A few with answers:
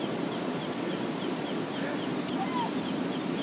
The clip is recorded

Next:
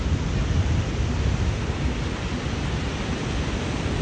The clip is recorded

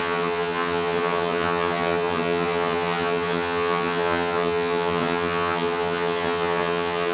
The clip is remade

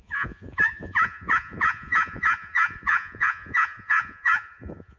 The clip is remade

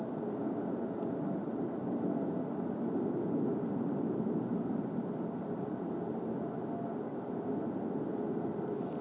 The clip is recorded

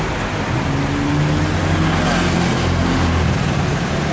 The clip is recorded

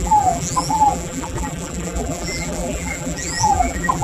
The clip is remade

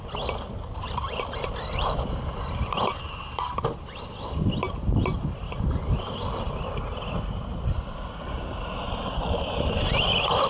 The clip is recorded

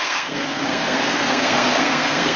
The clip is remade